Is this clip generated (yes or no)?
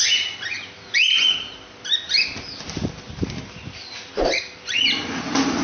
no